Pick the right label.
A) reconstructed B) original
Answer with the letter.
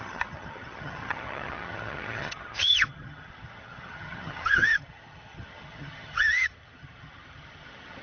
A